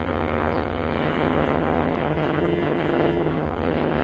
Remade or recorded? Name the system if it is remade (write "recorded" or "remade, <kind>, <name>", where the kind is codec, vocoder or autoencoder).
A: remade, vocoder, HiFi-GAN